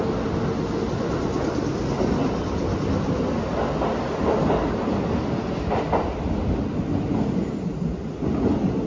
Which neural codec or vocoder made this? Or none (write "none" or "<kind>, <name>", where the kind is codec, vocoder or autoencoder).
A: none